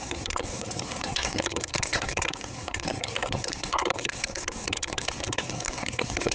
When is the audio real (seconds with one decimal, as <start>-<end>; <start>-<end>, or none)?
none